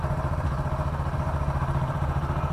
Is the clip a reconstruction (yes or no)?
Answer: yes